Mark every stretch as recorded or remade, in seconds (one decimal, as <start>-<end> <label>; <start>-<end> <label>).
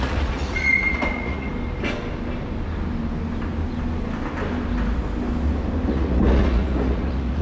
0.0-1.5 remade; 1.5-5.9 recorded; 5.9-7.4 remade